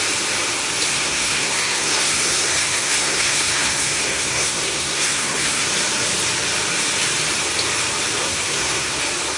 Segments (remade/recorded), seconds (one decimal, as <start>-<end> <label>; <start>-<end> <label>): 0.0-0.9 recorded; 0.9-5.7 remade; 5.7-8.2 recorded; 8.2-9.0 remade; 9.0-9.4 recorded